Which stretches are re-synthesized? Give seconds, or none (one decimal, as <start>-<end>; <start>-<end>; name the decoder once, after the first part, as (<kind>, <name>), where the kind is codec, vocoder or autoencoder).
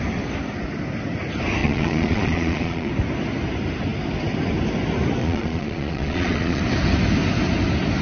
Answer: 1.6-2.9 (vocoder, Vocos); 5.2-6.6